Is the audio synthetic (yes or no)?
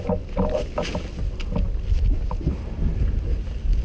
no